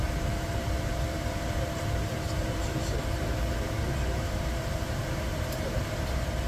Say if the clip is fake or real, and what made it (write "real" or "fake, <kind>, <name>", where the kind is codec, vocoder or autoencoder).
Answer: fake, vocoder, BigVGAN v2